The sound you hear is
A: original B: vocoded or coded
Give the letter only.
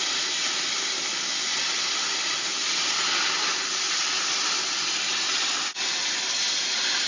A